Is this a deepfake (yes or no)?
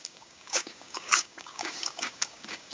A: yes